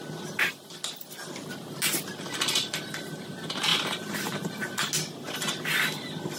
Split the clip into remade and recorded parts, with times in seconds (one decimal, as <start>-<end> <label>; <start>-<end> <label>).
0.0-3.7 recorded; 3.7-4.8 remade; 4.8-6.4 recorded